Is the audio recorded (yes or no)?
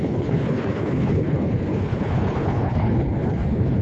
no